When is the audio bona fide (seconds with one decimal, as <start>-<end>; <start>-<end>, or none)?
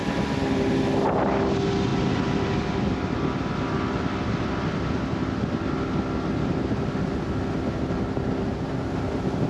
0.0-9.5